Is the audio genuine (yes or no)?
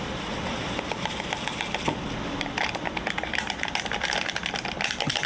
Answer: yes